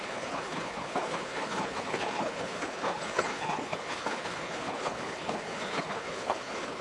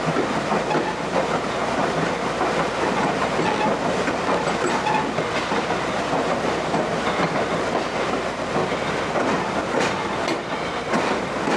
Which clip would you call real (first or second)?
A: second